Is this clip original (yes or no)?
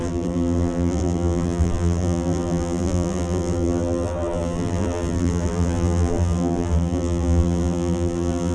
no